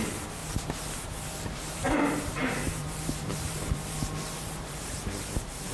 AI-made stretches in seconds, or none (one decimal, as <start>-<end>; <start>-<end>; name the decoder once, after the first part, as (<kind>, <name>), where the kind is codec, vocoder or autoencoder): 0.0-0.4 (vocoder, BigVGAN v2); 1.0-5.7